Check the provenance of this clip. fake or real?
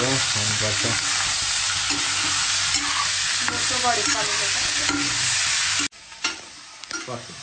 real